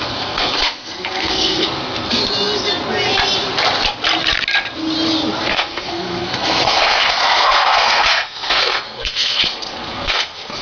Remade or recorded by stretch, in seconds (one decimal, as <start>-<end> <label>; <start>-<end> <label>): 0.0-2.2 remade; 2.2-5.4 recorded; 5.4-10.6 remade